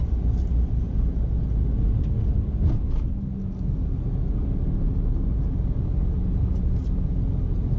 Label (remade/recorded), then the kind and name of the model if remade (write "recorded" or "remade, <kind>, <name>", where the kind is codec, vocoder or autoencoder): recorded